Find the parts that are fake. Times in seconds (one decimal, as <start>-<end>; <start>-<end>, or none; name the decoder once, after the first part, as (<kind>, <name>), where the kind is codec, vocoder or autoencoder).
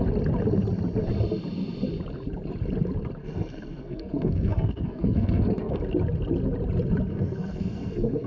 3.2-5.8 (codec, SNAC); 7.1-8.3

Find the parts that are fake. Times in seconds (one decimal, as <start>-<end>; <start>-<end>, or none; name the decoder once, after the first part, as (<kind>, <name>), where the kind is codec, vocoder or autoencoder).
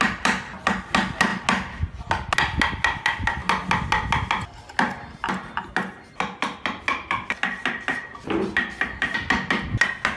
none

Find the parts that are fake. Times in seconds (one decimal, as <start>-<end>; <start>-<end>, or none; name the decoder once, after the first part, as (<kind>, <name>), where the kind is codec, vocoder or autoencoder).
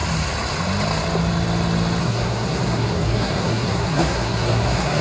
2.0-5.0 (codec, SNAC)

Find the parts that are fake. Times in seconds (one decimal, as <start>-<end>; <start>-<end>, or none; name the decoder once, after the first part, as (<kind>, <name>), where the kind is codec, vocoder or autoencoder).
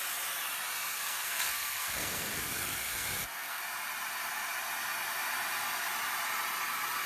0.9-3.6 (codec, SNAC)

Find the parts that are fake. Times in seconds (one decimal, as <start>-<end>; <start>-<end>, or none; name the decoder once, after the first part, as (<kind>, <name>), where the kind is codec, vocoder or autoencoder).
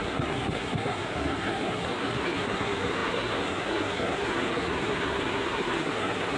0.0-6.4 (codec, SNAC)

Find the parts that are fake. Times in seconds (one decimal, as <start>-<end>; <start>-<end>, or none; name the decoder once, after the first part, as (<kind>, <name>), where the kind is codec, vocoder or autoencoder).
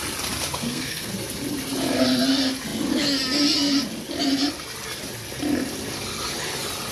0.6-1.1 (codec, SNAC)